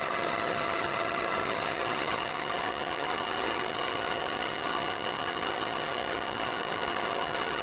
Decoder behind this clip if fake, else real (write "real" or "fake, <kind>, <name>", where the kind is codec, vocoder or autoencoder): fake, vocoder, HiFi-GAN